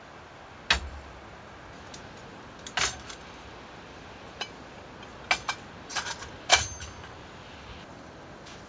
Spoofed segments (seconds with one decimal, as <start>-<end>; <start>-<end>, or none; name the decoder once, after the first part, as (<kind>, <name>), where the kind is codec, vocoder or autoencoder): none